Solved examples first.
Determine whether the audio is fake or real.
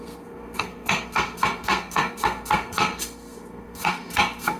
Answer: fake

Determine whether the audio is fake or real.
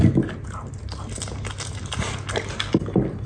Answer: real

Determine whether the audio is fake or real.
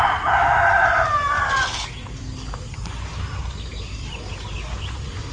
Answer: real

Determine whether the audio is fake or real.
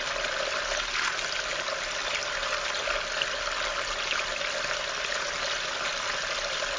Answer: real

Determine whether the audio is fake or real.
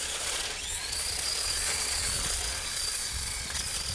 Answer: fake